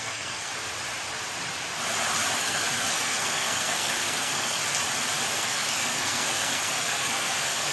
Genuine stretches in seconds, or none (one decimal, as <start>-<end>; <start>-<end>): 0.5-2.4; 4.6-5.3